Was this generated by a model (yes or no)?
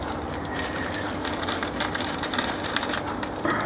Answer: yes